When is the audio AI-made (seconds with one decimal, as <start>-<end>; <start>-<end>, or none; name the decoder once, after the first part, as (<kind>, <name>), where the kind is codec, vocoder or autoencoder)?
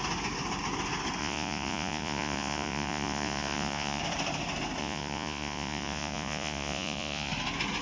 1.2-4.0 (vocoder, Vocos); 4.8-7.3